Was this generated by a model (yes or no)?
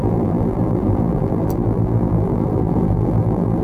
yes